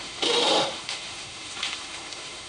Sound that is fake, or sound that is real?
fake